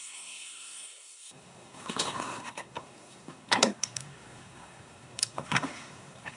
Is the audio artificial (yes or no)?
yes